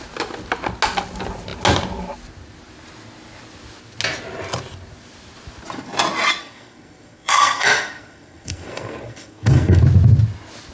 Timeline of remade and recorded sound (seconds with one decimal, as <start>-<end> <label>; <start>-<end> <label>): 0.0-6.4 recorded; 6.4-9.8 remade; 9.8-10.7 recorded